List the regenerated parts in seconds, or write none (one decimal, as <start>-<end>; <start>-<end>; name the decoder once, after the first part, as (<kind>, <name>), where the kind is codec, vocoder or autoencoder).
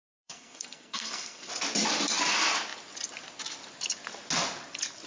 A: 0.0-1.5 (codec, SNAC)